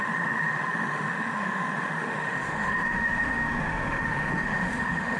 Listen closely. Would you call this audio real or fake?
fake